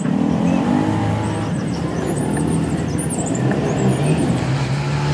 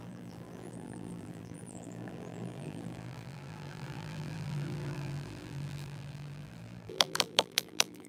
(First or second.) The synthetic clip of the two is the second